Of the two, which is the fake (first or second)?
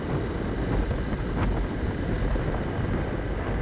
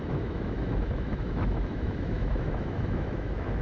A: second